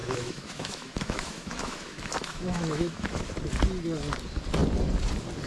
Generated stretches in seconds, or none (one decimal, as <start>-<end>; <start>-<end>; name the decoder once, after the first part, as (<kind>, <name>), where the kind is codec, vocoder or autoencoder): 0.0-3.3 (autoencoder, DAC-VAE)